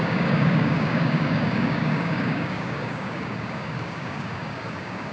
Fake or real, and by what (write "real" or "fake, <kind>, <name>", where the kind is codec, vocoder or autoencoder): fake, codec, DAC